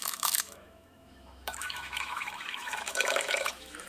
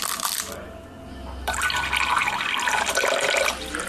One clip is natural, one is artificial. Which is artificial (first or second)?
first